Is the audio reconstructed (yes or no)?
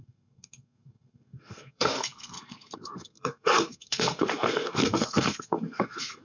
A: yes